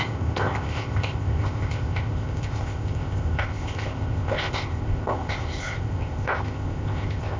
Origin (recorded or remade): remade